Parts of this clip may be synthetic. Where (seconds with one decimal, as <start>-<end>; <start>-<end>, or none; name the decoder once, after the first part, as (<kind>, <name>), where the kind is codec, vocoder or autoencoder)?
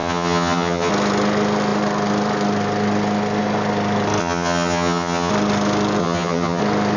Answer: 0.0-0.9 (vocoder, HiFi-GAN); 4.2-5.3; 6.0-6.6